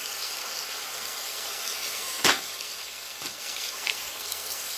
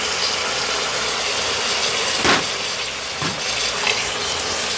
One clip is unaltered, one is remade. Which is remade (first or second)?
first